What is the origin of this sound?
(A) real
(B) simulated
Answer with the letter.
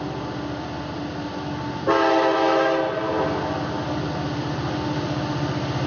A